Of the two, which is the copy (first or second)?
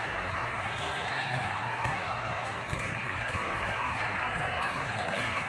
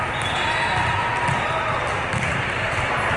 first